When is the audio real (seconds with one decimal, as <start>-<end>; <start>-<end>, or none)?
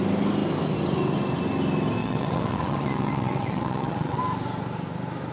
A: 0.0-2.0; 4.2-5.3